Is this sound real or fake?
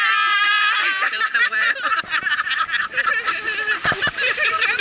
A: real